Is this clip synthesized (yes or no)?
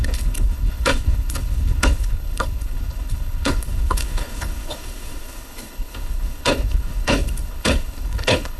yes